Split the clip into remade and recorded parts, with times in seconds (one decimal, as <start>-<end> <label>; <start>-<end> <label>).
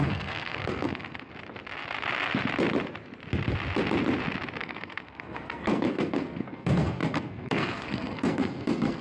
0.0-1.3 remade; 1.3-4.6 recorded; 4.6-9.0 remade